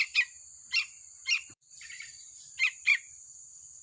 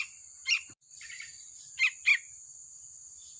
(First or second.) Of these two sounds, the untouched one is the second